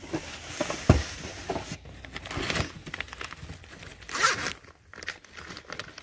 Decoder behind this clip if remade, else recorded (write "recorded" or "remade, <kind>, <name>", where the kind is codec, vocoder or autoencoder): recorded